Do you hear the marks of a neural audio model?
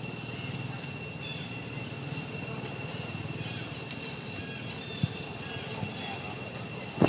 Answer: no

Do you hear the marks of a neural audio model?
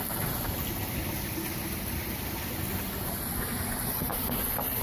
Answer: no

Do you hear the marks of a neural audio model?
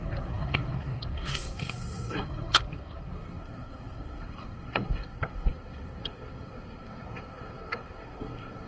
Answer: yes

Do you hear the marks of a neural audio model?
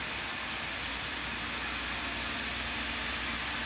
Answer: no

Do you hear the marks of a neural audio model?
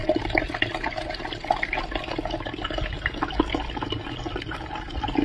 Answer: no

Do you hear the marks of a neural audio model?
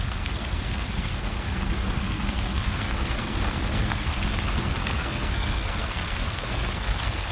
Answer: yes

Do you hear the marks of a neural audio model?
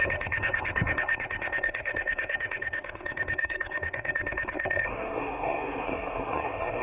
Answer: yes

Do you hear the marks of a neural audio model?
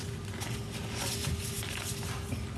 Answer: no